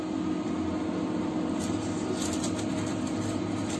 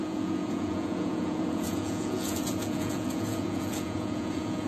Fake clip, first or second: second